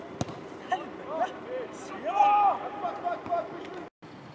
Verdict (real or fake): real